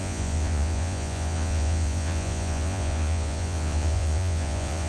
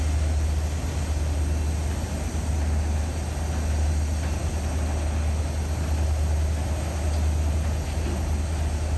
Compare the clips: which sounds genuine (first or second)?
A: second